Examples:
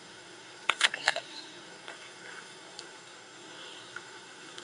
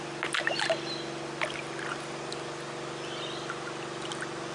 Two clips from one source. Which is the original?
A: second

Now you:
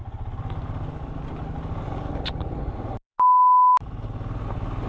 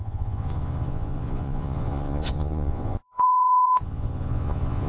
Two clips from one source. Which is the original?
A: first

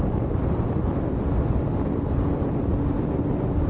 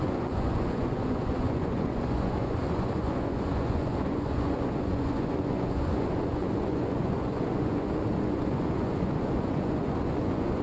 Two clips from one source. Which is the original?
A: first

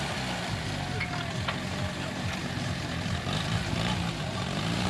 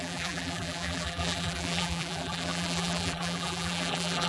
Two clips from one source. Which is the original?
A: first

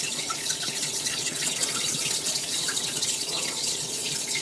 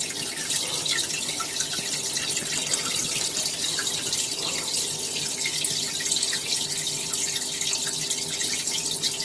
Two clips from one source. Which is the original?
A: second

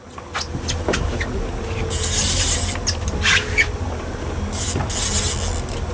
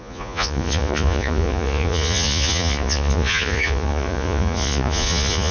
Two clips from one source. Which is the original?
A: first